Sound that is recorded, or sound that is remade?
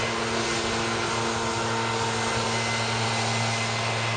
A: recorded